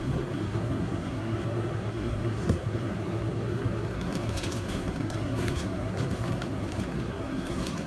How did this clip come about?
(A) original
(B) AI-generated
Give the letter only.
B